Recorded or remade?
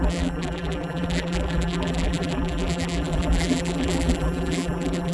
remade